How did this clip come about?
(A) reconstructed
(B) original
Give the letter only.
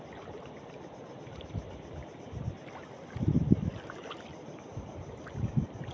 B